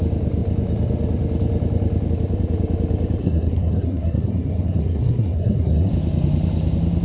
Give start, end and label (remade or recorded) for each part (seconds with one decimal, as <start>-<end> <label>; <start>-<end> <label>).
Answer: 0.0-3.2 recorded; 3.2-5.9 remade; 5.9-7.0 recorded